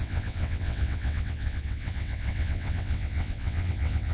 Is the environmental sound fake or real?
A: fake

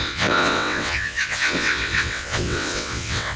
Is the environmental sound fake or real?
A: fake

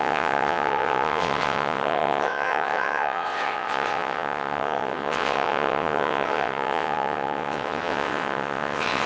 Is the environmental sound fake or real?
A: fake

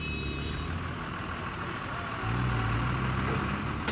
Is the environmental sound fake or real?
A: real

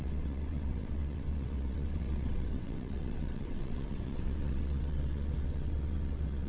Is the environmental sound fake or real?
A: fake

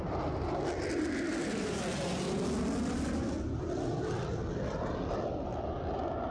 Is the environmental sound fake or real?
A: real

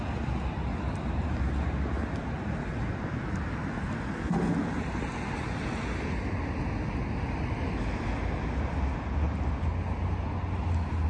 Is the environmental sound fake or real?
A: real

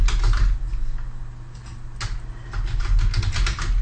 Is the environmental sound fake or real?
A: real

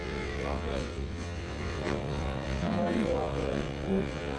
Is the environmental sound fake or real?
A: fake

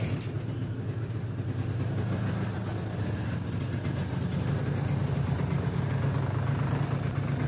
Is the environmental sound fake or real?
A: real